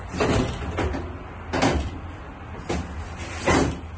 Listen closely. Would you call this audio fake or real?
real